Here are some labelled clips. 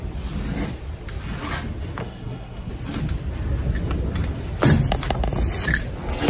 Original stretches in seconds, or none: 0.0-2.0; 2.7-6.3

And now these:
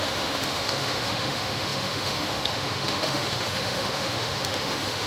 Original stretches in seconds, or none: none

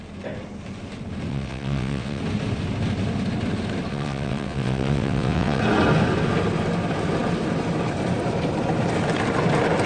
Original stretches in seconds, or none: 0.0-1.3; 2.2-3.9; 5.6-9.9

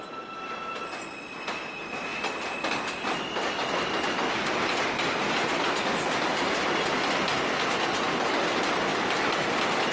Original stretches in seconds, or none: 0.0-9.9

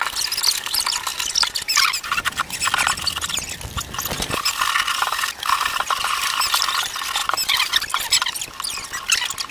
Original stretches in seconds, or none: 0.0-9.5

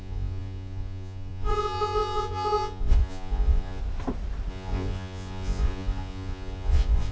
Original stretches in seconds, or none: 3.8-4.5